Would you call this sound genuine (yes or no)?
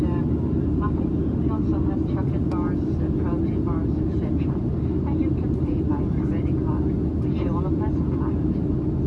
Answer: yes